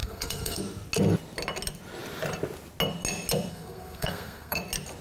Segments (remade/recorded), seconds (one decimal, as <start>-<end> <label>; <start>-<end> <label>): 0.0-0.6 remade; 0.6-3.5 recorded; 3.5-4.6 remade; 4.6-5.0 recorded

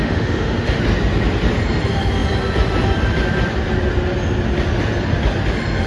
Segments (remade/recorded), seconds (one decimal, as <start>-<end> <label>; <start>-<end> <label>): 0.0-0.8 remade; 0.8-5.9 recorded

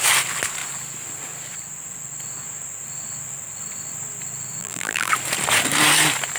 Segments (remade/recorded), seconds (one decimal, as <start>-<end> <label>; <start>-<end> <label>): 0.0-4.6 recorded; 4.6-5.1 remade; 5.1-6.4 recorded

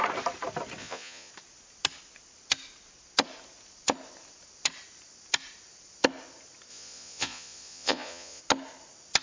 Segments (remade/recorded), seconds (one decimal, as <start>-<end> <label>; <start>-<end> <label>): 0.0-0.8 recorded; 0.8-1.3 remade; 1.3-6.7 recorded; 6.7-8.4 remade; 8.4-9.2 recorded